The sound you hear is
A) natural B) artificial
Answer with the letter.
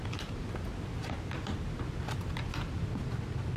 A